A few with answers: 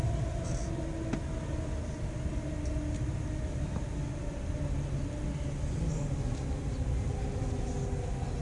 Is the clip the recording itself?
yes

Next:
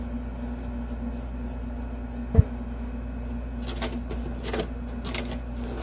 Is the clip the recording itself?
yes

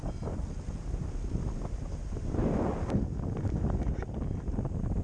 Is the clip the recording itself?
yes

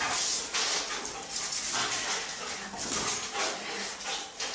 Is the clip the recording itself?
yes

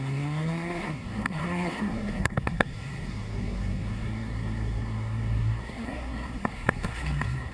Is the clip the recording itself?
no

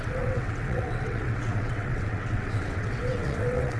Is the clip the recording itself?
no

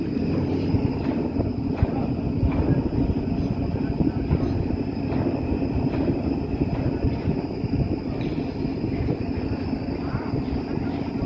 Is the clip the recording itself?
yes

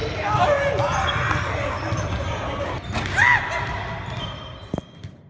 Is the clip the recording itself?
yes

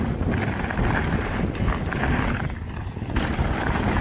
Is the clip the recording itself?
yes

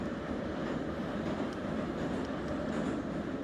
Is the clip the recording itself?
yes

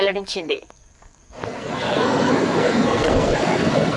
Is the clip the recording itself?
no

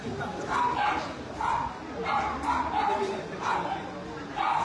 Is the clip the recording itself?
yes